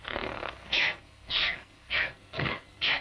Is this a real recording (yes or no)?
no